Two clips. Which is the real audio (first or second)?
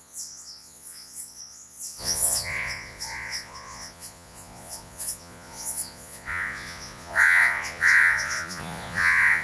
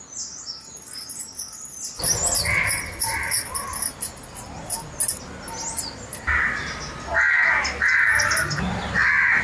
second